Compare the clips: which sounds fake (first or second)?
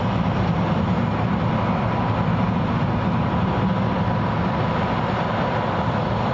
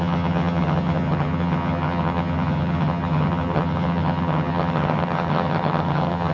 second